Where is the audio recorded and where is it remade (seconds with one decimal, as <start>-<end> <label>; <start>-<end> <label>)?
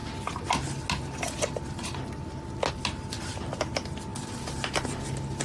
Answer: 0.0-5.4 recorded